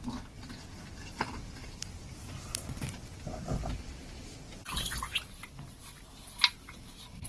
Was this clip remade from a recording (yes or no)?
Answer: no